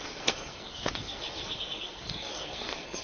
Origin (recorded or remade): remade